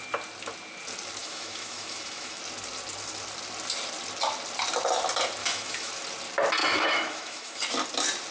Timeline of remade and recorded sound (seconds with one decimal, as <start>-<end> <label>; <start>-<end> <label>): 0.0-1.2 recorded; 1.2-2.4 remade; 2.4-5.4 recorded; 5.4-5.9 remade; 5.9-6.6 recorded; 6.6-7.6 remade; 7.6-8.3 recorded